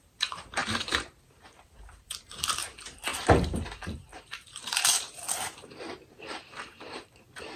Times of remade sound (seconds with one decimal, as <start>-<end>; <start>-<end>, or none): 0.0-7.6